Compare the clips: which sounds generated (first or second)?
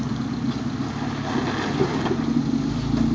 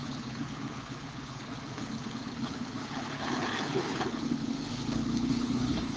second